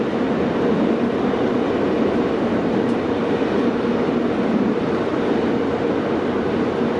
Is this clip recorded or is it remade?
recorded